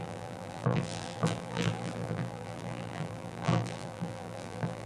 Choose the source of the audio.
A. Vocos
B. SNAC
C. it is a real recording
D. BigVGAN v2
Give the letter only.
D